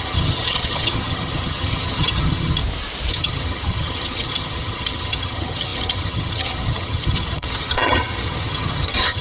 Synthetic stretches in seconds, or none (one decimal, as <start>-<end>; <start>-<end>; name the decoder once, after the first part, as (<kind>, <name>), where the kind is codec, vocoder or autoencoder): 0.0-2.6 (vocoder, HiFi-GAN); 3.1-9.2